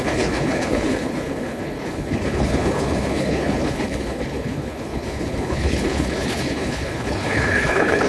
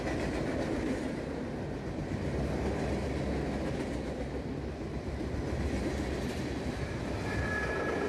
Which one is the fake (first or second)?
first